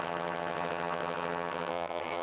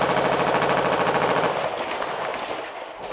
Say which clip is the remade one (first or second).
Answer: first